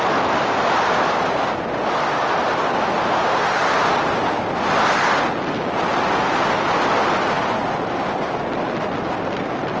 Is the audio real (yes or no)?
yes